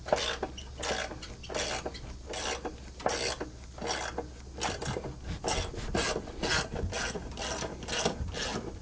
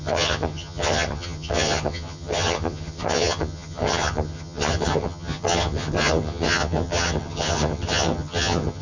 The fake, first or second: second